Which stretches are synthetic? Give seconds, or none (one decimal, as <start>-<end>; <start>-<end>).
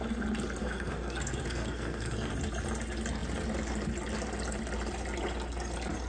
0.6-2.3